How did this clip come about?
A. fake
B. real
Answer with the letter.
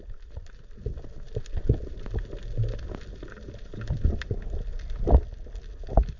B